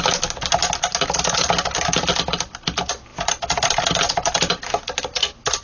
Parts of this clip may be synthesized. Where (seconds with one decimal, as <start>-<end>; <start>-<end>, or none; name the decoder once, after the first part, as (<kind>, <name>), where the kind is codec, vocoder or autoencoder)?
none